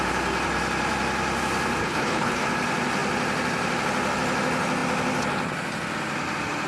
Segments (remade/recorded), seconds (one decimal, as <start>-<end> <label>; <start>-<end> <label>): 0.0-1.8 recorded; 1.8-2.4 remade; 2.4-6.7 recorded